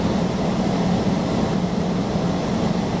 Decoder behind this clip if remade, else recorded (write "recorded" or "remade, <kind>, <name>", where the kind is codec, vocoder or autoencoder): recorded